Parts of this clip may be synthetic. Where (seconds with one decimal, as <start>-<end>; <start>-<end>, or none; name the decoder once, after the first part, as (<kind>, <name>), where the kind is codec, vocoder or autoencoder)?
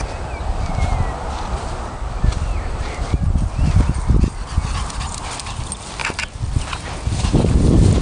none